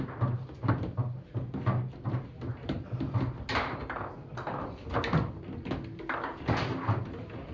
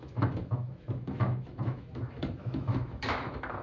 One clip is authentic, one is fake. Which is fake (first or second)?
second